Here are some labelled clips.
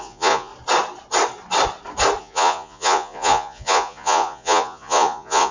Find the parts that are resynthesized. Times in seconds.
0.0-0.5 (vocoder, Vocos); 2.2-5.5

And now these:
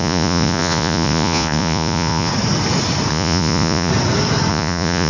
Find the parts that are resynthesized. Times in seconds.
0.0-2.3 (vocoder, Vocos); 3.1-3.9; 4.5-5.1

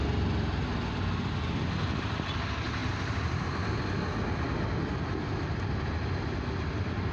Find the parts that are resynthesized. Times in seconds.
none

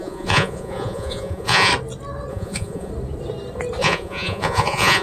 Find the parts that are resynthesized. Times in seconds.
0.0-1.7 (vocoder, Vocos); 2.3-2.9; 3.8-5.0

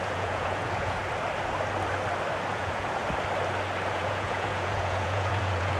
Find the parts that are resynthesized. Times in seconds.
0.0-1.0 (vocoder, Vocos); 2.5-3.0; 3.9-5.8

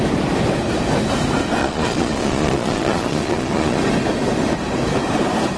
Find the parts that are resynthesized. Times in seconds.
1.6-3.8 (vocoder, Vocos)

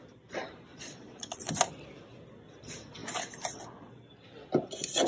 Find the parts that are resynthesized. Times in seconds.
0.7-1.5 (vocoder, Vocos)

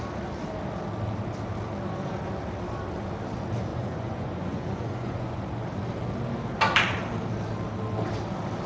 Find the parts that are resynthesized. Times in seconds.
3.7-5.4 (vocoder, Vocos)